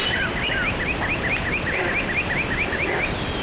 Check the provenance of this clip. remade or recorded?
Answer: recorded